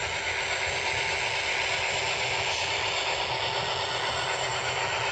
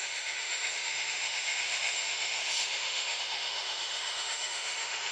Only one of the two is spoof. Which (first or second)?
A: second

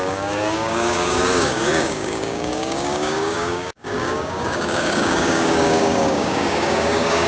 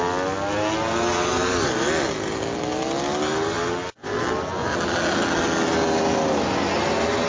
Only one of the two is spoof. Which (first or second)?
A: first